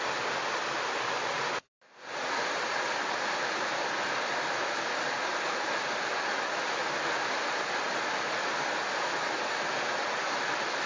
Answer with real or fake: real